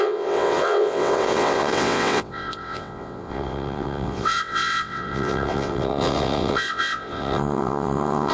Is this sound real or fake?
fake